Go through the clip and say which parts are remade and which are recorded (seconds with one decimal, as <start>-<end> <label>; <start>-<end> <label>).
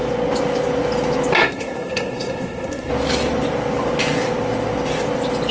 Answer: 0.0-1.4 recorded; 1.4-2.9 remade; 2.9-5.5 recorded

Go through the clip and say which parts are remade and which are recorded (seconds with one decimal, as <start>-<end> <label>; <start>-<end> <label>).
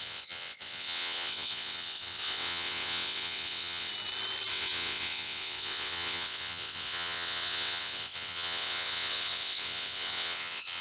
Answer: 0.0-3.9 remade; 3.9-4.5 recorded; 4.5-10.8 remade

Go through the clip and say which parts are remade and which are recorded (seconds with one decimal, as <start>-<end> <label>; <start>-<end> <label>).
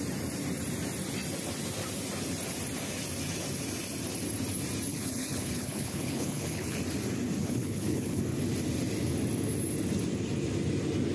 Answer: 0.0-4.9 recorded; 4.9-6.8 remade; 6.8-7.4 recorded; 7.4-8.2 remade; 8.2-11.1 recorded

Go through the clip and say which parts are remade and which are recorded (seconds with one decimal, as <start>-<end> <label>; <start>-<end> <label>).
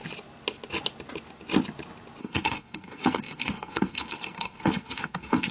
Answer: 0.0-2.2 recorded; 2.2-5.5 remade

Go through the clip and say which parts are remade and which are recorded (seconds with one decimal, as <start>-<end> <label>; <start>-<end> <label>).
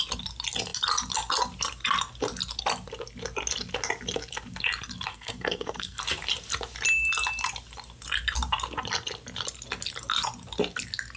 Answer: 0.0-5.1 recorded; 5.1-6.0 remade; 6.0-11.2 recorded